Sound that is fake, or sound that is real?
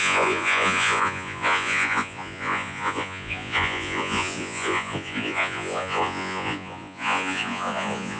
fake